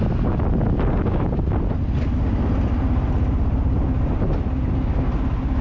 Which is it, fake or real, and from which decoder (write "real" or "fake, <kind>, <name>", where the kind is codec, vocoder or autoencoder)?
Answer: real